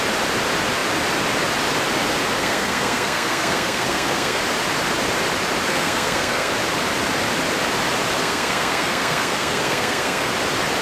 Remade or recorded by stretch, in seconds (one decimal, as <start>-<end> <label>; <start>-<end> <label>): 0.0-2.4 recorded; 2.4-4.4 remade; 4.4-5.7 recorded; 5.7-6.5 remade; 6.5-8.2 recorded; 8.2-10.3 remade; 10.3-10.8 recorded

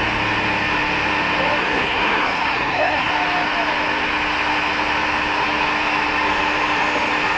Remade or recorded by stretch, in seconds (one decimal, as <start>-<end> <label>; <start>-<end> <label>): 0.0-1.6 recorded; 1.6-3.1 remade; 3.1-7.4 recorded

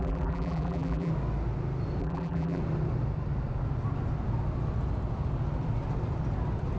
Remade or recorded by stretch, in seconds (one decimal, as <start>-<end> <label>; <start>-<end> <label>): 0.0-1.1 remade; 1.1-2.0 recorded; 2.0-2.6 remade; 2.6-6.8 recorded

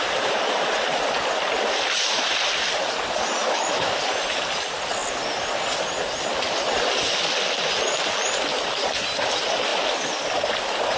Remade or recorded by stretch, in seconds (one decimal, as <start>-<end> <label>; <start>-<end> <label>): 0.0-3.4 recorded; 3.4-4.0 remade; 4.0-11.0 recorded